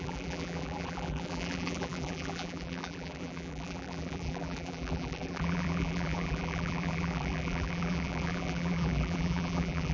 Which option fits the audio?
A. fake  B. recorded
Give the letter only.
A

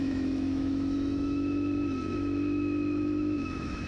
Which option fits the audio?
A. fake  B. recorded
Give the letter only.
A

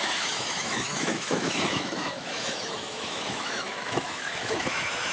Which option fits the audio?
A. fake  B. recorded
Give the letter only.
A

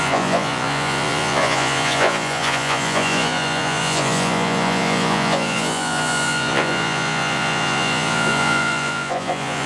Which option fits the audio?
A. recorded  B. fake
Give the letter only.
B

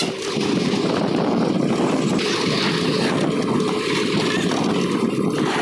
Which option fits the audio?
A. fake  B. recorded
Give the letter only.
B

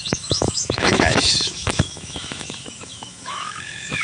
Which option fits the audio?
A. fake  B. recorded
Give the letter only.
A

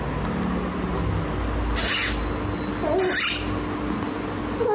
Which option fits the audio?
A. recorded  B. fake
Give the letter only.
A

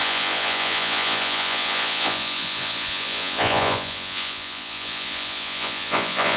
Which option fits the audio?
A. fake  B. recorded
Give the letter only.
A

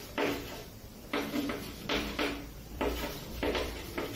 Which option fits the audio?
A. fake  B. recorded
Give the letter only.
A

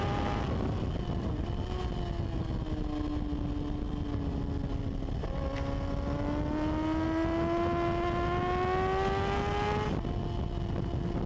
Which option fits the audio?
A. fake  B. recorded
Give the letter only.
B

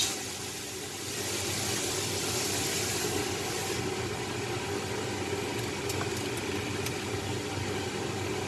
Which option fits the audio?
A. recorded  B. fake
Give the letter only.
A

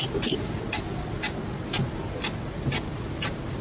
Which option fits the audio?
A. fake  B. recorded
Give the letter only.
B